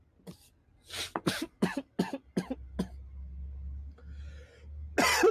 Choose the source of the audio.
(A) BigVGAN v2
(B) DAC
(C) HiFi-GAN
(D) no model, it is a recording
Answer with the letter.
D